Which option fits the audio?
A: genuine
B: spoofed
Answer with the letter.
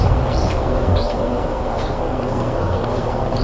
B